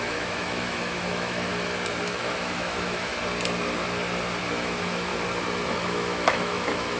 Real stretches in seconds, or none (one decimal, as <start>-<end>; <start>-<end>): 1.5-2.0; 3.1-4.5; 5.1-5.7